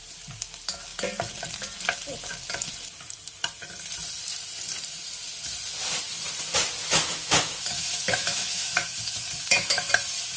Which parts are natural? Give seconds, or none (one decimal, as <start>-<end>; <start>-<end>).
0.0-6.8; 9.9-10.4